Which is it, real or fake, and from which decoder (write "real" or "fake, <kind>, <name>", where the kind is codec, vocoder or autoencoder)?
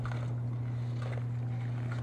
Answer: real